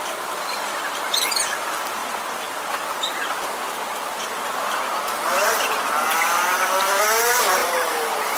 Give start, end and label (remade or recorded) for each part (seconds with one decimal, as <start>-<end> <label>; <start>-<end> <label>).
0.0-7.6 recorded; 7.6-8.4 remade